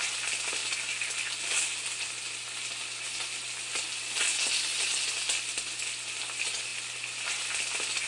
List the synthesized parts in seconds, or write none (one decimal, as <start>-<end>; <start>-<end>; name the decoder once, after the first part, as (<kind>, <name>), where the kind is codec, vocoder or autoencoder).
none